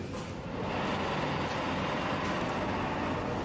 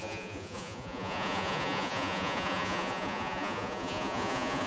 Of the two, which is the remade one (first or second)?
second